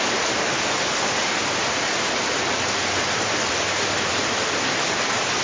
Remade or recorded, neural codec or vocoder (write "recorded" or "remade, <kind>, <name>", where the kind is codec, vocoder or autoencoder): recorded